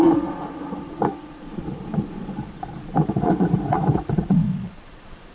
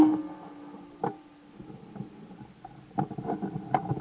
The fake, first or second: first